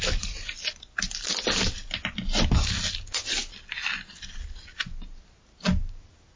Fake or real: real